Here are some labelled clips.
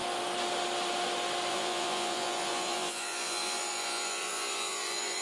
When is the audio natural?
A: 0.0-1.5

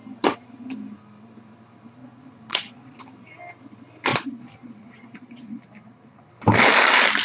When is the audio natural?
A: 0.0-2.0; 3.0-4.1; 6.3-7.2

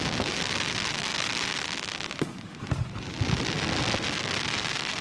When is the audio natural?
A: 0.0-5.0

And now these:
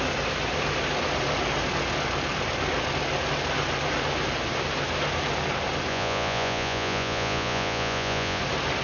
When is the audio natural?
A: 0.0-5.9; 8.4-8.8

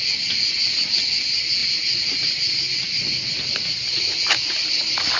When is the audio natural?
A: 0.0-5.2